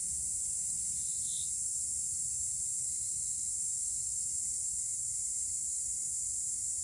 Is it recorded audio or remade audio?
remade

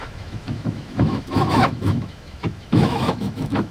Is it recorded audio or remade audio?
remade